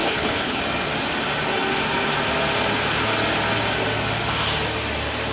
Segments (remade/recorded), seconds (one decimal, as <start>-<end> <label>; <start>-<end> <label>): 0.0-0.6 remade; 0.6-5.3 recorded

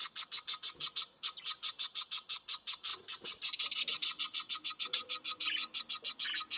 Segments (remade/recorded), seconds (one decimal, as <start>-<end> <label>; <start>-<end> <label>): 0.0-6.6 recorded

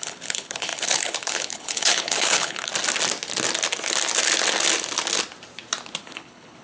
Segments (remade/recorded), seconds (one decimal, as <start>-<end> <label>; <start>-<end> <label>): 0.0-2.7 remade; 2.7-6.0 recorded; 6.0-6.6 remade

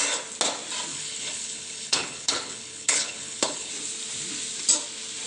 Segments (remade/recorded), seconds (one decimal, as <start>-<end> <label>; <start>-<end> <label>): 0.0-0.9 recorded; 0.9-3.7 remade; 3.7-5.3 recorded

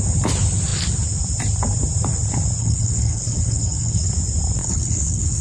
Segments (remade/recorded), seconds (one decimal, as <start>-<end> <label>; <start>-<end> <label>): 0.0-2.6 recorded; 2.6-4.1 remade; 4.1-4.6 recorded; 4.6-5.4 remade